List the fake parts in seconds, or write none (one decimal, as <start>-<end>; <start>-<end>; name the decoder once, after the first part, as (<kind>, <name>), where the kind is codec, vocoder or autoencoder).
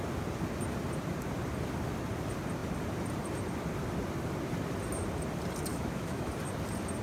5.7-6.3 (autoencoder, DAC-VAE)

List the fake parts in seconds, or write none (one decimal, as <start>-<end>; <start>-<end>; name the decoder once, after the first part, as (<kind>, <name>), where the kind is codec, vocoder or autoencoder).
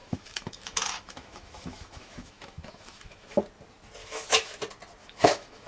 0.0-3.4 (autoencoder, DAC-VAE); 4.0-4.6; 5.0-5.7